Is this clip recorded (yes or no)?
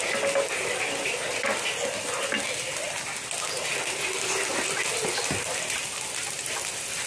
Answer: yes